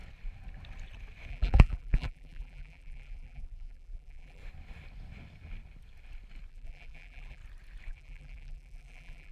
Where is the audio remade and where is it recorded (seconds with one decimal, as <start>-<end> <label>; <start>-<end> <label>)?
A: 0.0-1.3 recorded; 1.3-4.4 remade; 4.4-6.5 recorded; 6.5-7.4 remade; 7.4-7.9 recorded; 7.9-9.3 remade